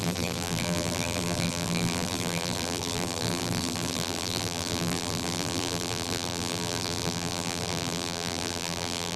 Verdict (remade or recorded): remade